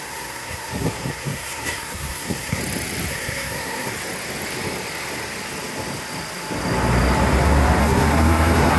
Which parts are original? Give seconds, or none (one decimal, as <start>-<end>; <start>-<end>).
2.6-3.1; 3.9-7.8